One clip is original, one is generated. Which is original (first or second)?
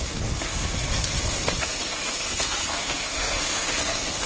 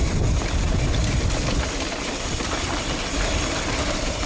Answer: second